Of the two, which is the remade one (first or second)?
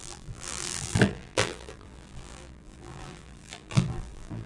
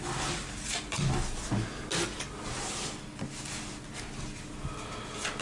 first